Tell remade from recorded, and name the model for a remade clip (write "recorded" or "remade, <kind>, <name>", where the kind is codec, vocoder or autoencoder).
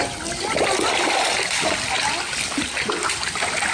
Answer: recorded